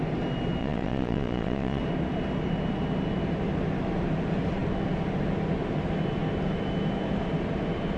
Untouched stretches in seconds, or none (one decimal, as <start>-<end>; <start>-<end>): 0.0-0.6; 1.8-8.0